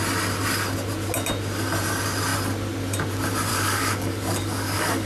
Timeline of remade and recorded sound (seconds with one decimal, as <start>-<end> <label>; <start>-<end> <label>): 0.0-3.5 recorded; 3.5-5.1 remade

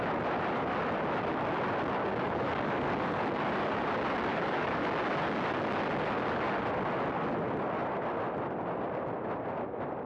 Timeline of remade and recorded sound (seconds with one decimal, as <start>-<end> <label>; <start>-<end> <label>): 0.0-2.1 recorded; 2.1-3.2 remade; 3.2-4.3 recorded; 4.3-4.8 remade; 4.8-10.1 recorded

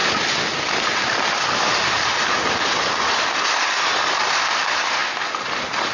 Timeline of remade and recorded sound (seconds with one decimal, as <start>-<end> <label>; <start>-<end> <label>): 0.0-5.9 recorded

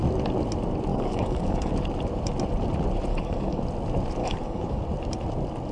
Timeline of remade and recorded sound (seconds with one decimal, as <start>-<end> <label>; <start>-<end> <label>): 0.0-0.9 recorded; 0.9-1.7 remade; 1.7-3.1 recorded; 3.1-3.6 remade; 3.6-4.2 recorded; 4.2-4.8 remade; 4.8-5.7 recorded

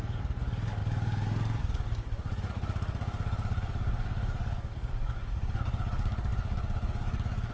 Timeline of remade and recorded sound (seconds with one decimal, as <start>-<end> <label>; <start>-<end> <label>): 0.0-7.5 remade